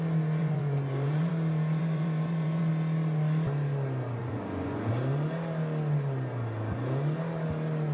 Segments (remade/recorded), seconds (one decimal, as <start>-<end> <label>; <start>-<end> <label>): 0.0-0.4 recorded; 0.4-1.3 remade; 1.3-1.8 recorded; 1.8-2.7 remade; 2.7-4.2 recorded; 4.2-4.9 remade; 4.9-7.9 recorded